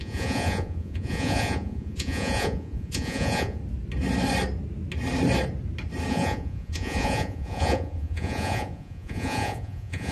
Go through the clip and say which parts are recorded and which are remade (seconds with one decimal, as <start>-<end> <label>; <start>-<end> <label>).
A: 0.0-3.6 remade; 3.6-6.1 recorded; 6.1-10.1 remade